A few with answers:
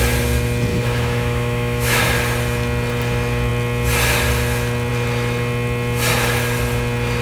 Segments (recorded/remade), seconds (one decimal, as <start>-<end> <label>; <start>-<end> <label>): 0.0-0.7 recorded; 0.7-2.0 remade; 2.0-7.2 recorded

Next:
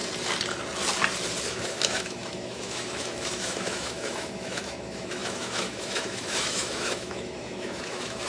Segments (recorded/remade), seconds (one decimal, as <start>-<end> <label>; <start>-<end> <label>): 0.0-1.5 recorded; 1.5-8.3 remade

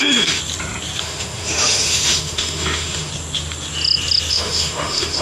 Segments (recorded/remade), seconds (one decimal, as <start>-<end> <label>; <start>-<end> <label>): 0.0-0.4 remade; 0.4-1.0 recorded; 1.0-3.1 remade; 3.1-4.3 recorded; 4.3-5.2 remade